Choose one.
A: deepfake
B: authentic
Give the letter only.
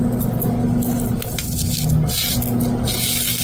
B